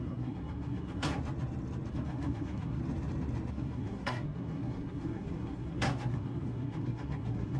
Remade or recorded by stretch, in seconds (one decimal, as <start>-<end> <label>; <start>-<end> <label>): 0.0-1.2 remade; 1.2-1.9 recorded; 1.9-2.8 remade; 2.8-3.5 recorded; 3.5-7.6 remade

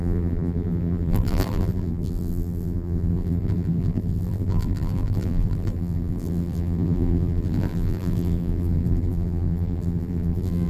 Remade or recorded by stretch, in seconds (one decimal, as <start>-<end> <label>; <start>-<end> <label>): 0.0-10.7 remade

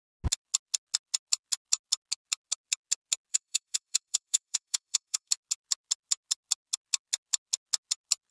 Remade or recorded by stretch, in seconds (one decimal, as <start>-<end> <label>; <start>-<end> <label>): 0.0-3.3 recorded; 3.3-5.3 remade; 5.3-8.3 recorded

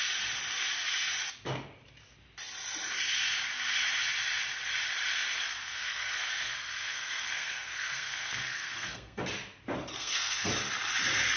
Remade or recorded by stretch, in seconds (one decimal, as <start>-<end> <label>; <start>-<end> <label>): 0.0-5.3 recorded; 5.3-9.2 remade; 9.2-9.9 recorded; 9.9-10.5 remade; 10.5-11.4 recorded

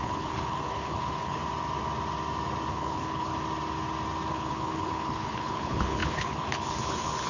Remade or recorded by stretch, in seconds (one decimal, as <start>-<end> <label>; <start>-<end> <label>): 0.0-1.4 remade; 1.4-2.7 recorded; 2.7-3.3 remade; 3.3-4.3 recorded; 4.3-7.3 remade

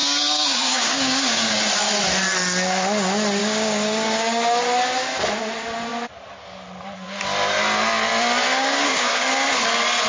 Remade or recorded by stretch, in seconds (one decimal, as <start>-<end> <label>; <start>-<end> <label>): 0.0-1.5 remade; 1.5-3.4 recorded; 3.4-4.6 remade; 4.6-8.5 recorded; 8.5-9.3 remade; 9.3-10.1 recorded